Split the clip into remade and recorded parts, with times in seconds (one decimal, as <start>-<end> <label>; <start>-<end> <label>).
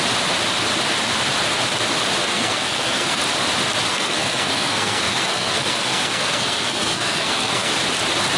0.0-2.2 recorded; 2.2-3.2 remade; 3.2-3.9 recorded; 3.9-7.7 remade; 7.7-8.4 recorded